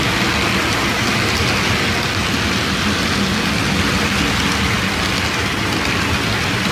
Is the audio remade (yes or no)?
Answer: no